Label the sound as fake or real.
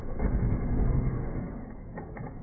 fake